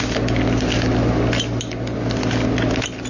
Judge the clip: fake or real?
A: real